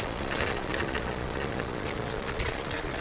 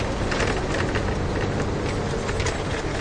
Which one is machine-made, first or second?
first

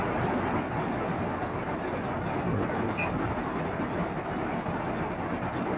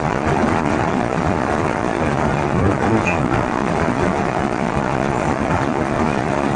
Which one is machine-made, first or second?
second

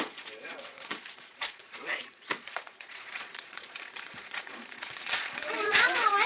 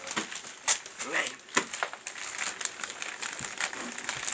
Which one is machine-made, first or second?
first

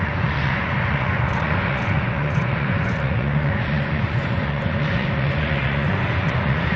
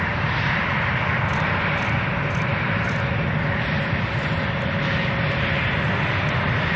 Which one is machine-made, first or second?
first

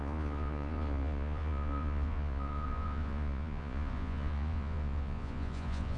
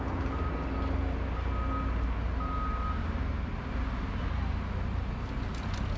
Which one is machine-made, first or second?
first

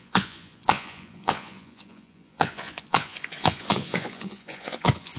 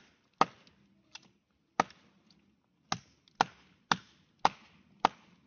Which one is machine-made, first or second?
first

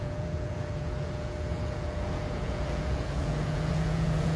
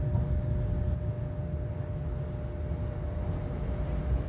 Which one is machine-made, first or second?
first